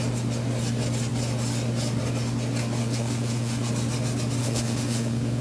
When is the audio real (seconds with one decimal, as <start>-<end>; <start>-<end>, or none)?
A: 0.0-2.8; 3.7-4.4